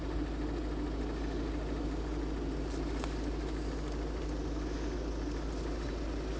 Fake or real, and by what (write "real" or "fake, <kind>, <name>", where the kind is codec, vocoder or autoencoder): real